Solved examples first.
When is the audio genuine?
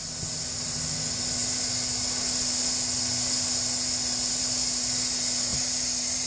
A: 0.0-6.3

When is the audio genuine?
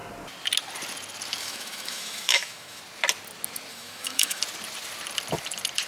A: 0.0-1.4; 2.8-3.7; 4.4-5.9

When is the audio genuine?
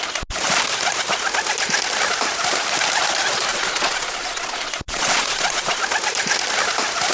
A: 0.0-3.5; 5.8-7.1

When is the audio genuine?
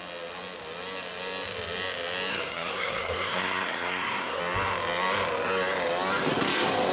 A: 0.0-2.3; 4.4-6.9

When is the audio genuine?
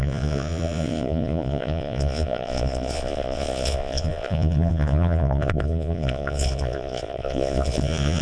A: none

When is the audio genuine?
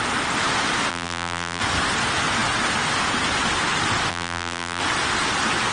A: 0.0-0.9; 1.6-4.1; 4.8-5.7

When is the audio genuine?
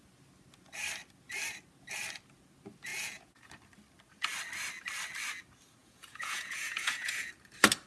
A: 0.0-2.9; 3.5-5.8; 7.3-7.9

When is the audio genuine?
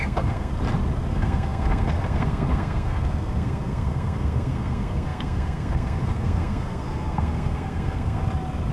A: 0.5-1.1; 8.2-8.7